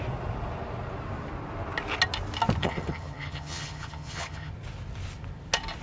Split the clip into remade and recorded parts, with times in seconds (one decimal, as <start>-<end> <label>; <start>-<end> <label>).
0.0-2.6 recorded; 2.6-4.5 remade; 4.5-5.8 recorded